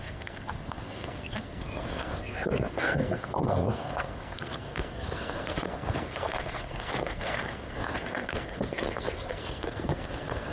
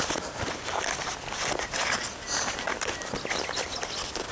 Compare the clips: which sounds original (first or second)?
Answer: second